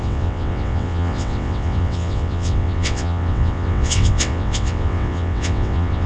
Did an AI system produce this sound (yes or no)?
yes